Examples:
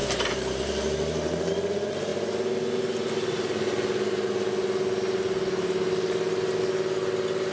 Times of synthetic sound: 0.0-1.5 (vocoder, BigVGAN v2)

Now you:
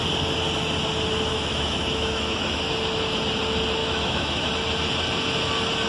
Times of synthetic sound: 1.3-2.6 (autoencoder, DAC-VAE); 3.8-4.5